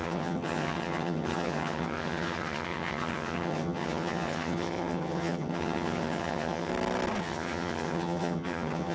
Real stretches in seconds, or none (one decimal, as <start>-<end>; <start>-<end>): 6.7-7.2